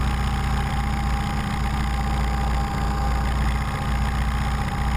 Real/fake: real